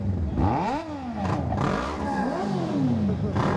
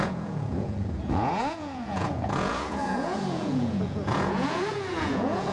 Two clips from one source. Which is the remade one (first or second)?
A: second